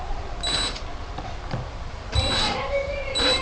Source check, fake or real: fake